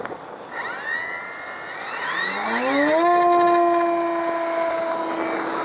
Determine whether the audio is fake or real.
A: real